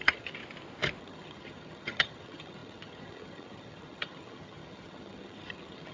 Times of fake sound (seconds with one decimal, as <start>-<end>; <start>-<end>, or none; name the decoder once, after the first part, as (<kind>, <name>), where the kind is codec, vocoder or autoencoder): 0.0-0.4 (vocoder, HiFi-GAN); 1.0-5.9